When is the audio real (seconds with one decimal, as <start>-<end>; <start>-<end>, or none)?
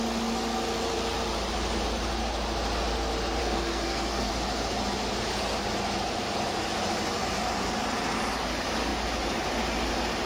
0.0-3.4; 4.3-10.3